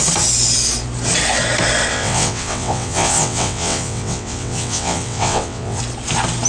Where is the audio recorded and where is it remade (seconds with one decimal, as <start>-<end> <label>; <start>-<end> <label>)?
0.0-1.9 recorded; 1.9-5.8 remade; 5.8-6.5 recorded